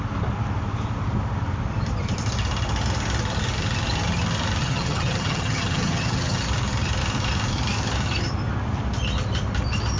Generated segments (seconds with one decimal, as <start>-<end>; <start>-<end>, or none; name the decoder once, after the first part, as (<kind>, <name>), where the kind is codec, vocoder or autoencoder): 4.6-6.4 (vocoder, HiFi-GAN)